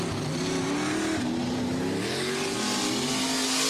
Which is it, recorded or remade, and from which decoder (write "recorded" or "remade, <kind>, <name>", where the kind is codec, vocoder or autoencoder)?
recorded